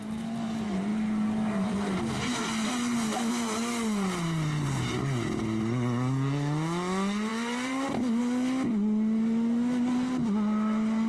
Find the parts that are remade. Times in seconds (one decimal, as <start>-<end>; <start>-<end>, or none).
7.3-8.2